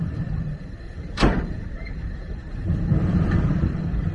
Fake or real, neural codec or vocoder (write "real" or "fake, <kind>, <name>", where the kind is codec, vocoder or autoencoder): fake, vocoder, BigVGAN v2